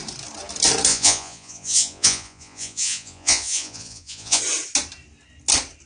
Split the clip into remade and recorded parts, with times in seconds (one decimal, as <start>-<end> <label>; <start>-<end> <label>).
0.0-0.9 recorded; 0.9-4.4 remade; 4.4-5.9 recorded